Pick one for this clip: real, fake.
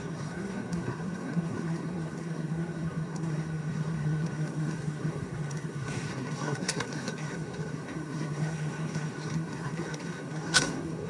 fake